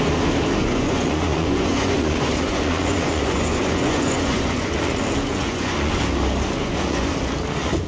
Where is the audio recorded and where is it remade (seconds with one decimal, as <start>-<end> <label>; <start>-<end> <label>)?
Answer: 0.0-0.6 recorded; 0.6-4.7 remade; 4.7-5.3 recorded; 5.3-6.0 remade; 6.0-6.6 recorded; 6.6-7.1 remade; 7.1-7.9 recorded